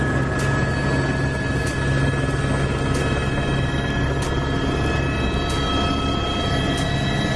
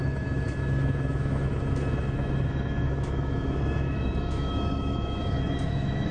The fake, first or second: second